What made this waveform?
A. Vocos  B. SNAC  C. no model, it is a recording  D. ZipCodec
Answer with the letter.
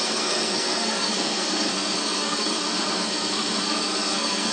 B